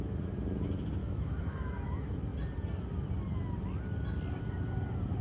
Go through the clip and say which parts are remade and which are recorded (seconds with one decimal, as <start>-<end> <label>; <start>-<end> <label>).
0.0-1.0 recorded; 1.0-1.6 remade; 1.6-5.2 recorded